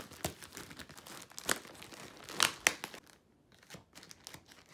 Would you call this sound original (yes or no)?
yes